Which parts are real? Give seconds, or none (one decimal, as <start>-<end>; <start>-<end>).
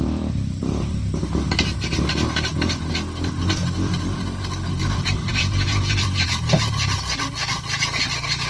1.0-4.4